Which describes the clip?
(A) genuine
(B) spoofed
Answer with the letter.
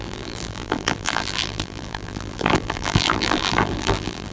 B